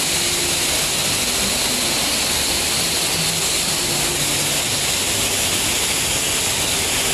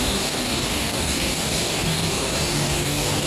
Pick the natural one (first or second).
first